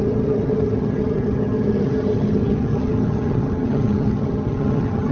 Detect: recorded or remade remade